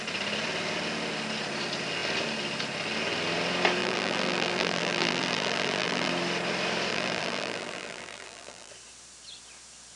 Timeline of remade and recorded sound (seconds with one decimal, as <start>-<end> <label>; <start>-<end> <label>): 0.0-3.8 recorded; 3.8-6.1 remade; 6.1-6.9 recorded; 6.9-8.7 remade; 8.7-10.0 recorded